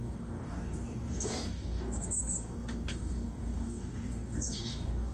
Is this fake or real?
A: fake